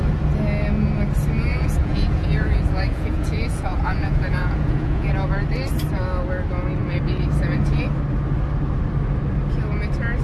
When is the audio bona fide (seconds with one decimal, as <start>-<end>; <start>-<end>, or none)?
0.0-1.5; 5.1-10.2

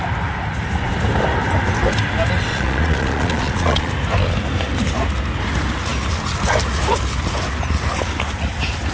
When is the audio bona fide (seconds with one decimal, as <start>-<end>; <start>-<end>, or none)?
0.0-2.5; 3.9-8.9